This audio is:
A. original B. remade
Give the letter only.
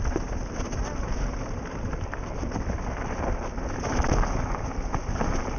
A